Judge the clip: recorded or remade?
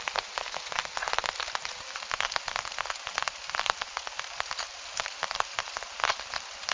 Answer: recorded